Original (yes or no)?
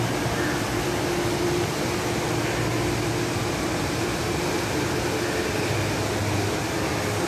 yes